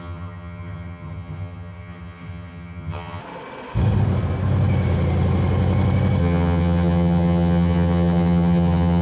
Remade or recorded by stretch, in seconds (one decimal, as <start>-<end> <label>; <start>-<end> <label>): 0.0-3.2 remade; 3.2-6.2 recorded; 6.2-9.0 remade